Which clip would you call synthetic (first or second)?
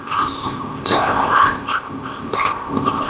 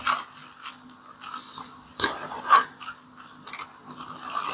first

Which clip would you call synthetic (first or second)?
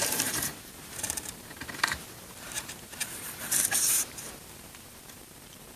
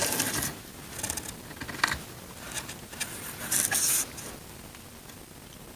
first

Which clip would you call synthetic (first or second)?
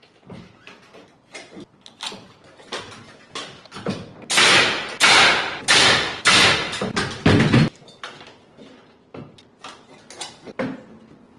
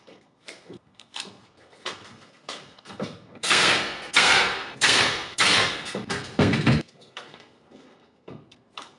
second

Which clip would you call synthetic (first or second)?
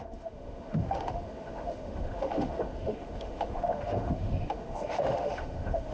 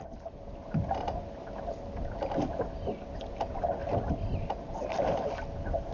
first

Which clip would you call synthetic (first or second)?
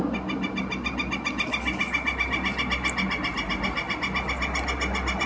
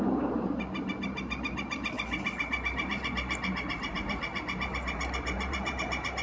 second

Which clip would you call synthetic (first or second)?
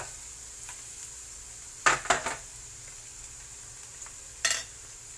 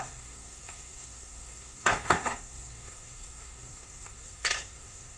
second